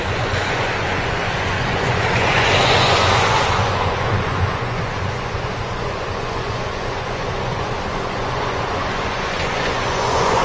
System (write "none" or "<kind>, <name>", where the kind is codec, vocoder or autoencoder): vocoder, Vocos